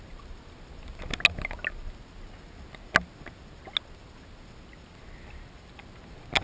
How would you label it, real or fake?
real